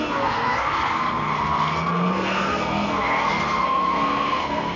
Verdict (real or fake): fake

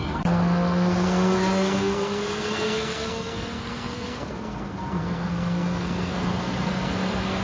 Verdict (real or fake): fake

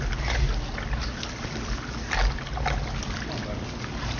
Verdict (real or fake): real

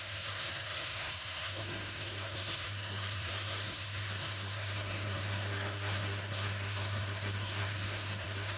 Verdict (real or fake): fake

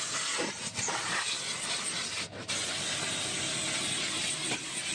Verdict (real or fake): real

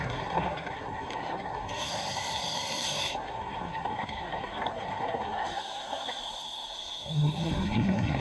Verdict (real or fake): fake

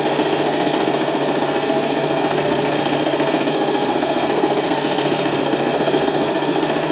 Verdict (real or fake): fake